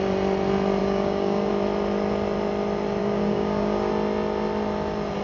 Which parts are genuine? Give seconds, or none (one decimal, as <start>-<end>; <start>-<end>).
0.0-0.8; 1.5-3.0; 3.9-5.2

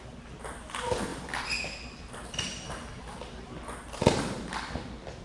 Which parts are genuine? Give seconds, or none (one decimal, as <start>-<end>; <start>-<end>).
0.0-5.2

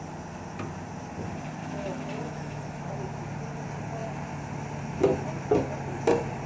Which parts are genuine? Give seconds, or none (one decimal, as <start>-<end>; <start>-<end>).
0.0-1.6; 2.9-6.5

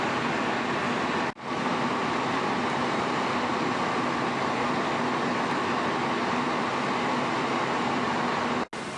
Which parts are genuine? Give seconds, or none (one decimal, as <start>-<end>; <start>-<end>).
0.0-9.0

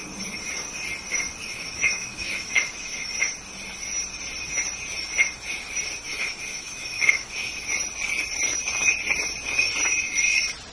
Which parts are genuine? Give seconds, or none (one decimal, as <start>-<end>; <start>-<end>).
0.0-1.4; 3.1-6.1; 7.7-10.7

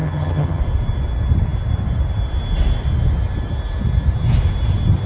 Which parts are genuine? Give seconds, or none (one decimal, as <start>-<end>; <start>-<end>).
0.6-5.1

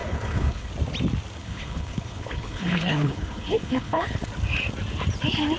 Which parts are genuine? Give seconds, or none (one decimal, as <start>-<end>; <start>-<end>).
0.7-1.4; 4.3-5.6